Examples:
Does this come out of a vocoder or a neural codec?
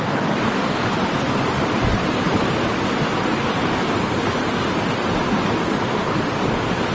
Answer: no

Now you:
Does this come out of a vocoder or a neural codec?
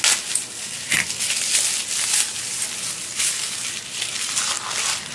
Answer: no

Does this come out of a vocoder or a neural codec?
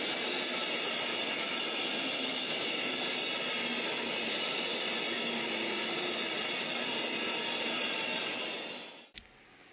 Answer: no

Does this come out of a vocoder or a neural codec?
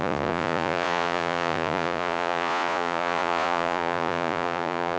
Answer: yes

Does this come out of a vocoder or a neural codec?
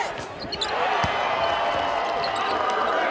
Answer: no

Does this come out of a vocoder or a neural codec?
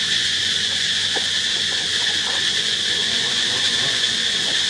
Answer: yes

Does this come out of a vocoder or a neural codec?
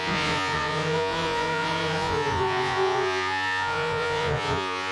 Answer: yes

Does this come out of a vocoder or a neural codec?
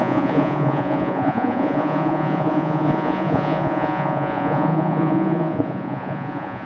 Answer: yes